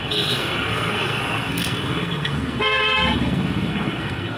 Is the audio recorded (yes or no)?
no